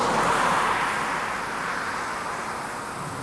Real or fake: real